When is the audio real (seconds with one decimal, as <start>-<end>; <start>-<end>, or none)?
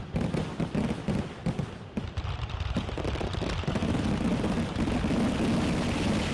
0.0-6.3